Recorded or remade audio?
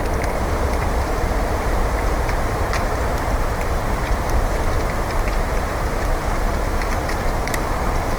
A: remade